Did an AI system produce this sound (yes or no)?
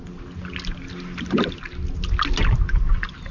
no